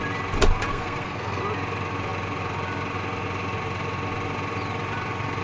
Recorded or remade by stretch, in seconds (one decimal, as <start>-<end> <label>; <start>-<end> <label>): 0.0-0.7 recorded; 0.7-1.4 remade; 1.4-5.4 recorded